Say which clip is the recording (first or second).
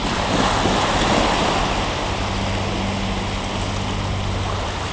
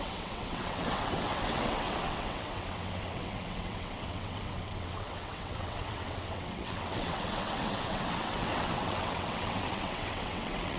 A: first